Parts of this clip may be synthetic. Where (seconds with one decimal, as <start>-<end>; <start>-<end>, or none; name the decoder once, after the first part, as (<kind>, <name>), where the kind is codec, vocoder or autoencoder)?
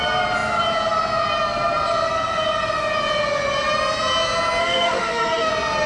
4.6-5.5 (autoencoder, DAC-VAE)